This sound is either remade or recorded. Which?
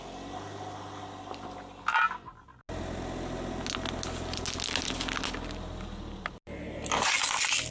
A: recorded